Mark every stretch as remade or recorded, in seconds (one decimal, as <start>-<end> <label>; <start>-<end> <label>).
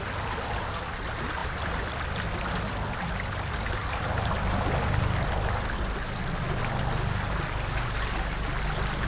0.0-9.1 recorded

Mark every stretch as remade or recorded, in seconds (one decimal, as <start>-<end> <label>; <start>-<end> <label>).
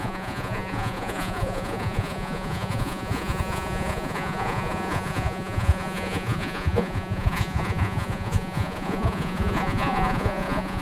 0.0-10.8 remade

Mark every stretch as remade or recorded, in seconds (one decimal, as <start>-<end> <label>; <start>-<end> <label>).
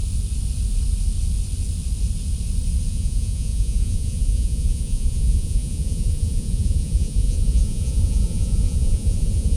0.0-2.9 recorded; 2.9-9.6 remade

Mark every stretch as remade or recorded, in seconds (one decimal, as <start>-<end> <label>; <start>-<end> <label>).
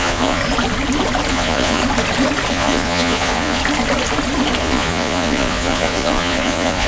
0.0-0.4 remade; 0.4-1.3 recorded; 1.3-1.8 remade; 1.8-2.5 recorded; 2.5-3.6 remade; 3.6-4.6 recorded; 4.6-6.9 remade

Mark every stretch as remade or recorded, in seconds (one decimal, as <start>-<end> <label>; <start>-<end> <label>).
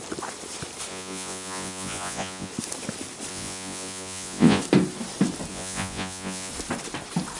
0.0-0.9 recorded; 0.9-2.5 remade; 2.5-3.3 recorded; 3.3-4.6 remade; 4.6-5.5 recorded; 5.5-6.5 remade; 6.5-7.4 recorded